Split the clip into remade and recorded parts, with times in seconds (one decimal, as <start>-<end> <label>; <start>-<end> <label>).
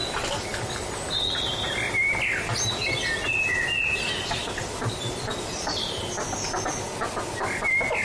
0.0-8.0 recorded